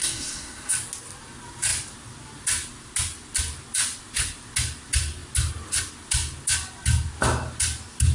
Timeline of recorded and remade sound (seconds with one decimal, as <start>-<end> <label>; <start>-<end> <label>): 0.0-0.7 remade; 0.7-8.1 recorded